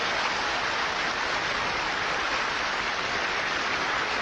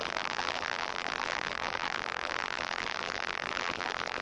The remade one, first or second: second